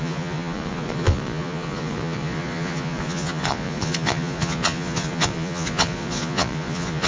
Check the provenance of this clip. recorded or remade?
remade